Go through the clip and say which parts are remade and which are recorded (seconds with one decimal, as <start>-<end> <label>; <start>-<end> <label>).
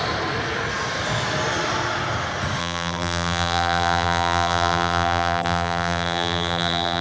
0.0-2.6 recorded; 2.6-7.0 remade